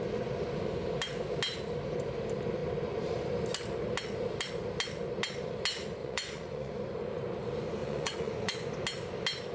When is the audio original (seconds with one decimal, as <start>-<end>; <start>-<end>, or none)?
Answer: 0.0-6.0; 6.7-7.8; 8.7-9.5